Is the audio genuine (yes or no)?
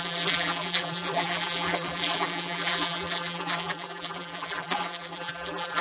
no